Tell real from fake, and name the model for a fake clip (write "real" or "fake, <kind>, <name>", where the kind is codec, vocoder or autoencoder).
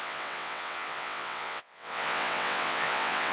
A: fake, vocoder, WaveNeXt